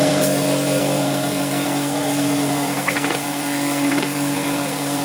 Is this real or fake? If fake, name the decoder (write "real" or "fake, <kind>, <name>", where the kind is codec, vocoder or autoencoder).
fake, codec, SNAC